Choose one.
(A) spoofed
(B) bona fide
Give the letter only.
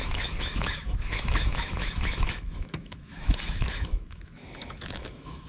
A